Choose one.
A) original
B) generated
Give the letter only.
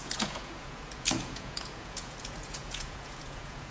B